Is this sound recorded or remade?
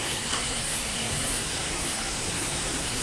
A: remade